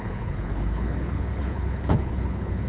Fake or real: fake